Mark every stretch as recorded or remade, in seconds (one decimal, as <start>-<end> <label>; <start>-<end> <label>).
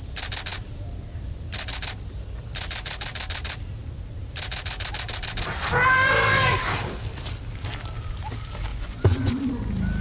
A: 0.0-8.7 recorded; 8.7-9.3 remade; 9.3-10.0 recorded